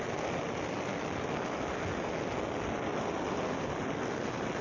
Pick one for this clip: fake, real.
real